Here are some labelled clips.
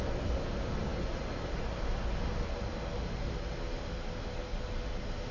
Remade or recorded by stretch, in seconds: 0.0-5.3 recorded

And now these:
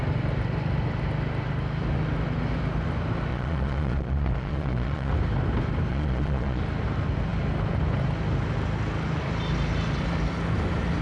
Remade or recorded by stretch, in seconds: 0.0-3.3 recorded; 3.3-5.1 remade; 5.1-5.9 recorded; 5.9-6.6 remade; 6.6-11.0 recorded

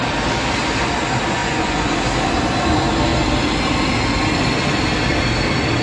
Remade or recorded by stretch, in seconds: 0.0-1.4 recorded; 1.4-1.9 remade; 1.9-5.8 recorded

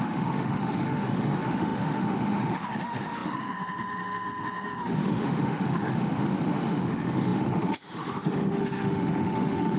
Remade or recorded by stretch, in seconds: 0.0-9.8 remade

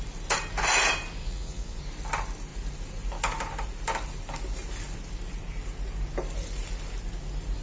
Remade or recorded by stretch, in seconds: 0.0-1.2 recorded; 1.2-1.8 remade; 1.8-7.6 recorded

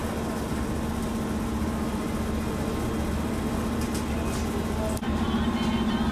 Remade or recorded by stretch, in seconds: 0.0-6.1 recorded